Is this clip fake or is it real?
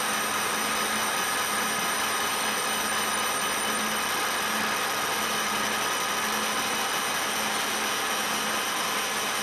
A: real